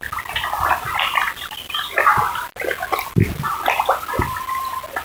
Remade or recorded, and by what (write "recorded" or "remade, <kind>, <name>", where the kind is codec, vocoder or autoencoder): recorded